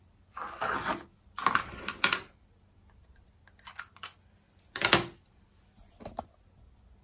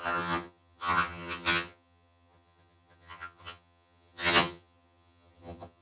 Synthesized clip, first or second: second